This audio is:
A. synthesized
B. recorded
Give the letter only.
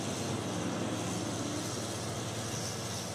B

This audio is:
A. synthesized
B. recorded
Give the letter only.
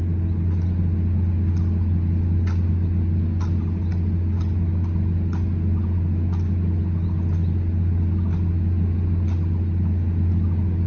B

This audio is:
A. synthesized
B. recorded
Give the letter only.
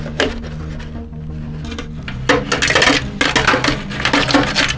B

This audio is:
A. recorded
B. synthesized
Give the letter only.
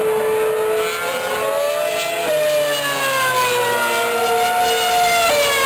A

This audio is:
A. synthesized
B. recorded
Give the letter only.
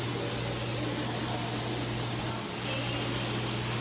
B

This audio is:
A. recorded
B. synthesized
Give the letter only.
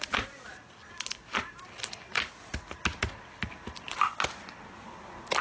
A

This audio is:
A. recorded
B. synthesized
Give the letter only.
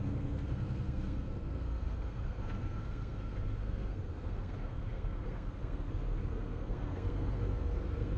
B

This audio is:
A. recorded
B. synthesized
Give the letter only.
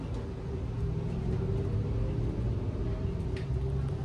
A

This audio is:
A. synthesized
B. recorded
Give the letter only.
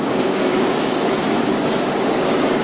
A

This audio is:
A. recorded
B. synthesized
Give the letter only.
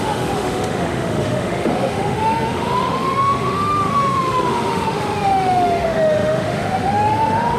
B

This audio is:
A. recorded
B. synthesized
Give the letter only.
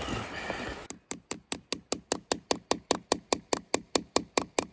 A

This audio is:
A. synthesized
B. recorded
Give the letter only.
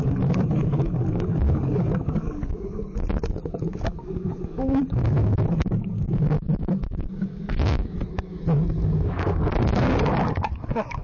A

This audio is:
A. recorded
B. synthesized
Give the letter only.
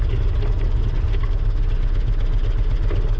A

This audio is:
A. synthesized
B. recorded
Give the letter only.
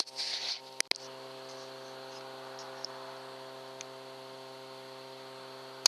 B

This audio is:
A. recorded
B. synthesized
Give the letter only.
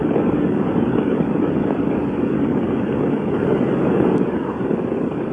B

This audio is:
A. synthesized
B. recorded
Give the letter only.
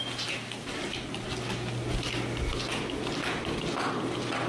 B